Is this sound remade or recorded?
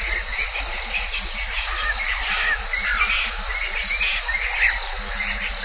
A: recorded